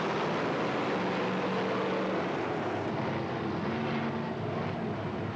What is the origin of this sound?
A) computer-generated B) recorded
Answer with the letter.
B